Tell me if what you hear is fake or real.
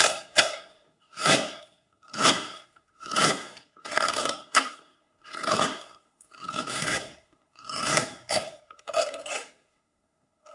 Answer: fake